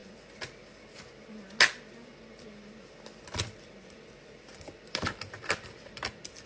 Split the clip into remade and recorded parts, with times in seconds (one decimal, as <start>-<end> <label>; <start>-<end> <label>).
0.0-3.9 recorded; 3.9-6.5 remade